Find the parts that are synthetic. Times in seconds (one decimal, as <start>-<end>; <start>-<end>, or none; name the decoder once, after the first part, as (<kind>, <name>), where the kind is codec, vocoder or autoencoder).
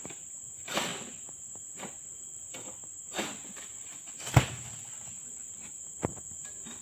none